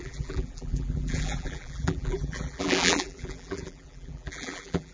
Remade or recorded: remade